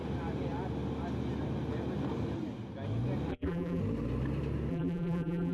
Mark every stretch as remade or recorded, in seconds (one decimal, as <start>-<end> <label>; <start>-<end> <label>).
0.0-3.3 recorded; 3.3-3.8 remade; 3.8-4.7 recorded; 4.7-5.5 remade